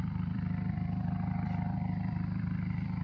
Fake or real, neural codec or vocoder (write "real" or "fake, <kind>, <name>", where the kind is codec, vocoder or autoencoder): fake, vocoder, BigVGAN v2